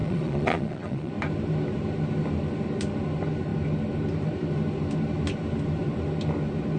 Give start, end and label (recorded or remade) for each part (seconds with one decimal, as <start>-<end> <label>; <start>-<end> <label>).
0.0-1.1 remade; 1.1-6.8 recorded